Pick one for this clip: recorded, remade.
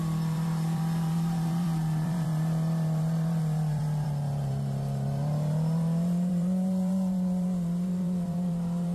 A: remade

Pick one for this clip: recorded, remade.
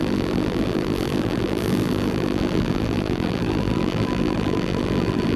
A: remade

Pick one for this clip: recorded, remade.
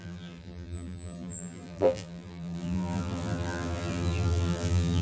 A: remade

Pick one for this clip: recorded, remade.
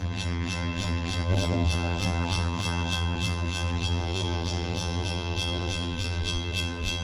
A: remade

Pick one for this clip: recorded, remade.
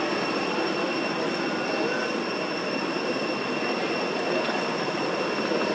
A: remade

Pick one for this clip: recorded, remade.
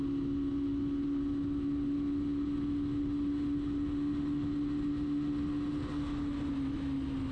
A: recorded